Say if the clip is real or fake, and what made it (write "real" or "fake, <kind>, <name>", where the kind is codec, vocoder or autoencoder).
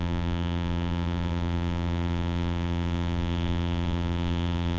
fake, vocoder, BigVGAN v2